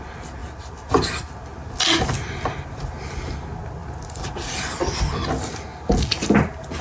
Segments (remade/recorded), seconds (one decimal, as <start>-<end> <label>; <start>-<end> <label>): 0.0-3.8 recorded; 3.8-4.5 remade; 4.5-6.8 recorded